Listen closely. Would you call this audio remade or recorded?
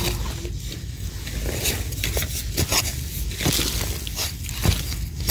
recorded